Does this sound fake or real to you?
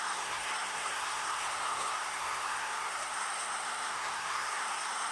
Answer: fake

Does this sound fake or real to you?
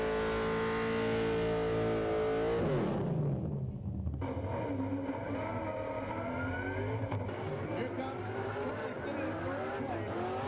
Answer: real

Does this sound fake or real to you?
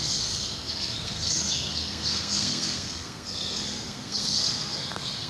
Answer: fake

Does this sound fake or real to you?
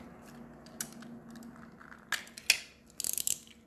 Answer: real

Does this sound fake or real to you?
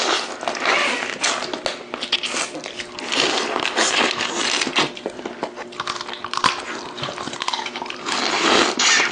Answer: real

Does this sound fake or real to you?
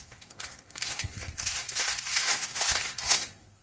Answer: fake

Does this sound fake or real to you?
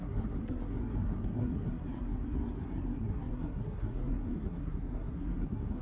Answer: fake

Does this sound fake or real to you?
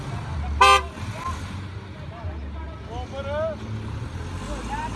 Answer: real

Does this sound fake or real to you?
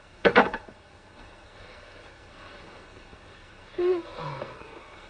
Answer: fake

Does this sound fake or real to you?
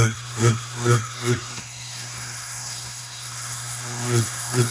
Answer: fake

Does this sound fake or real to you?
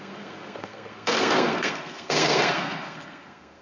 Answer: fake